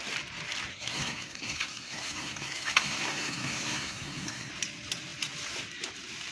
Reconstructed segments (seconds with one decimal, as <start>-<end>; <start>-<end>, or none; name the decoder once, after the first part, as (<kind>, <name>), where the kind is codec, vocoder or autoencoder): 0.7-4.5 (codec, SNAC)